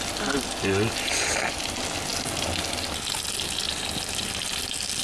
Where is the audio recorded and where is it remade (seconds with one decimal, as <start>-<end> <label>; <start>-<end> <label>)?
0.0-5.0 recorded